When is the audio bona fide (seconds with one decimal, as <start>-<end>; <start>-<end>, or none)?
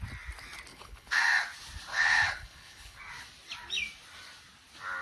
0.0-0.7; 1.2-1.9; 3.0-5.0